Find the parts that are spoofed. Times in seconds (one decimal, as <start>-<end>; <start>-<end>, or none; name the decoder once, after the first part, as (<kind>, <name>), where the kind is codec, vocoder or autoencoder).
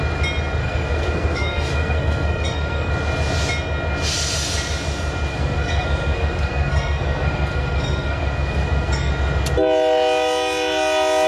0.6-2.9 (codec, SNAC); 5.3-9.1